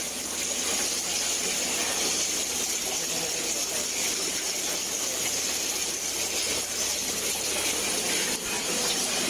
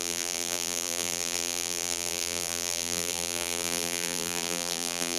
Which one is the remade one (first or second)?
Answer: second